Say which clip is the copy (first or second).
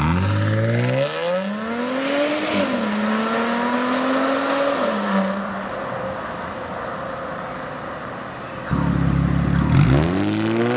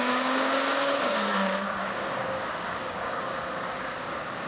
second